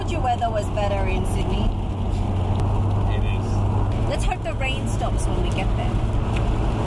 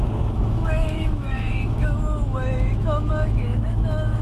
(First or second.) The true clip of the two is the first